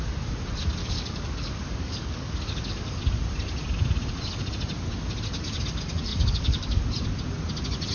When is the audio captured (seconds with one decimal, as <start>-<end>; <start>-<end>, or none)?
0.0-0.8; 3.0-6.1; 6.8-7.9